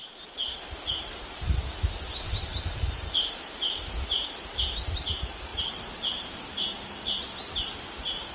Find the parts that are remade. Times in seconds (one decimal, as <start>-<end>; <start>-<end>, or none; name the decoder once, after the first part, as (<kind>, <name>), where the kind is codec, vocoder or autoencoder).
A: 0.0-4.6 (vocoder, BigVGAN v2); 5.5-7.2

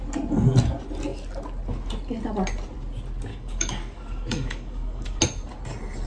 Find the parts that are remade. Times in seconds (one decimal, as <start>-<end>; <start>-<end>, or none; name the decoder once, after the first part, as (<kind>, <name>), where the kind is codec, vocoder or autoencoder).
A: 3.3-5.2 (codec, DAC)

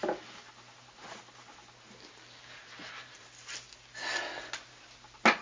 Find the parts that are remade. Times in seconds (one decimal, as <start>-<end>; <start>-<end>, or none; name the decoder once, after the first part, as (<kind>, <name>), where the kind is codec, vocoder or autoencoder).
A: none

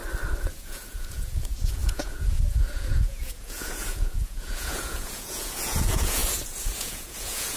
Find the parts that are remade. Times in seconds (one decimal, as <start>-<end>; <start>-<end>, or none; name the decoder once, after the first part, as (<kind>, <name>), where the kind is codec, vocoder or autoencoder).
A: 0.6-7.6 (vocoder, Vocos)

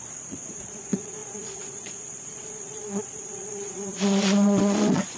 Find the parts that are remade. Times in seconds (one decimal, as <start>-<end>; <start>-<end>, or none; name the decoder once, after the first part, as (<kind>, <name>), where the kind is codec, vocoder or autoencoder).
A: 0.0-5.2 (vocoder, Vocos)

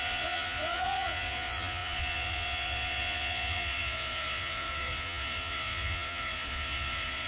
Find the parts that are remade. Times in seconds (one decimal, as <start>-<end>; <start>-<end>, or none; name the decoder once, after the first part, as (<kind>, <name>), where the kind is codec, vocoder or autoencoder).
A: 0.0-7.3 (vocoder, Vocos)